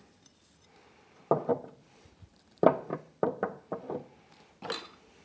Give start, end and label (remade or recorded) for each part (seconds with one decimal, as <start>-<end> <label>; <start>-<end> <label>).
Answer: 0.0-1.5 recorded; 1.5-3.9 remade; 3.9-5.2 recorded